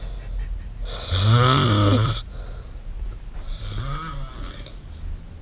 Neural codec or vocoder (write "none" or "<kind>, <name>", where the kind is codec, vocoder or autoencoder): none